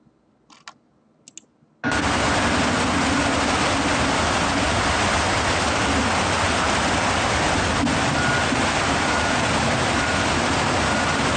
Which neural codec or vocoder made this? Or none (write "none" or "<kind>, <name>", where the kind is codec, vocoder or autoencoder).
none